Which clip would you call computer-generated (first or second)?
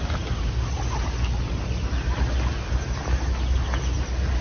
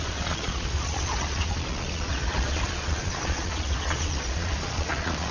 second